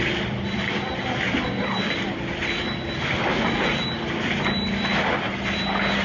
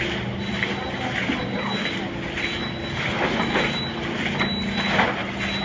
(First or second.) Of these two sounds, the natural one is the second